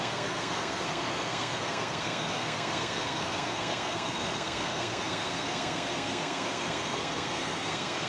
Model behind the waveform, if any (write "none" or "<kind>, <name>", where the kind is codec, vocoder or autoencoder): codec, SNAC